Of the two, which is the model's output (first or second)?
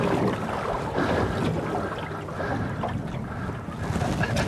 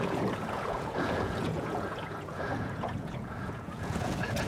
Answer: second